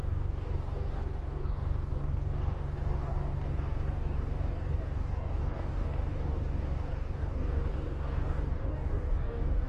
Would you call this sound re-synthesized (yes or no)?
yes